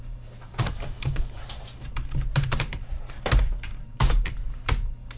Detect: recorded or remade remade